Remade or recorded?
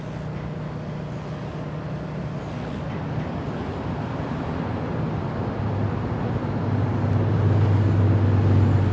recorded